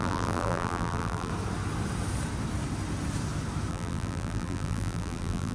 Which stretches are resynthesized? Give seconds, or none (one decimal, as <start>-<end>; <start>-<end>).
0.0-1.3; 3.7-5.5